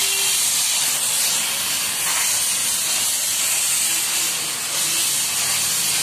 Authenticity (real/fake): real